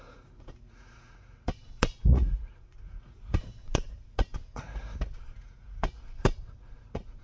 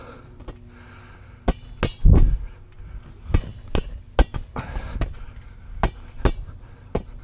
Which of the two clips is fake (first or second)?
first